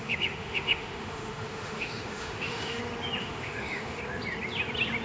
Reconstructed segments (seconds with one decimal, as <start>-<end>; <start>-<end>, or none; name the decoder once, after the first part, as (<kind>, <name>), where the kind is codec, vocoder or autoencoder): 0.0-2.8 (autoencoder, DAC-VAE); 3.2-4.0